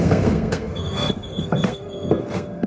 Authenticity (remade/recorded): remade